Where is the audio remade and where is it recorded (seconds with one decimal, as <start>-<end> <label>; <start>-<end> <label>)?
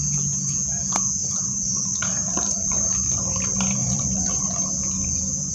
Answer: 0.0-1.2 recorded; 1.2-3.4 remade; 3.4-3.8 recorded; 3.8-4.6 remade; 4.6-5.5 recorded